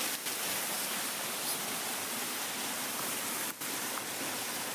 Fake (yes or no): no